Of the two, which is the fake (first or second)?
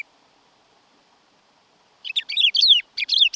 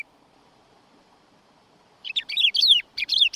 second